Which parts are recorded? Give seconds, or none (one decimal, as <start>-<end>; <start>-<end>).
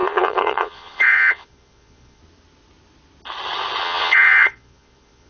2.2-3.8